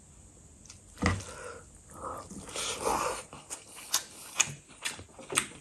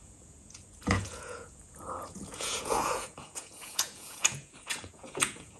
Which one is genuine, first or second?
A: first